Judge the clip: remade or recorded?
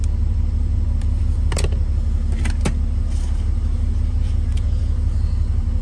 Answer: recorded